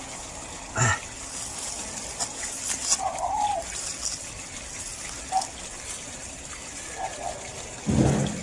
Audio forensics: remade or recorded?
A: recorded